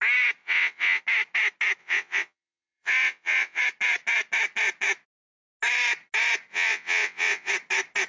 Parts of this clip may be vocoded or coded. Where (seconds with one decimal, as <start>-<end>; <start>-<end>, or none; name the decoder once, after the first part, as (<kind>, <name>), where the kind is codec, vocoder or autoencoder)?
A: 0.4-1.0 (vocoder, WaveNeXt); 1.8-3.6; 6.5-7.5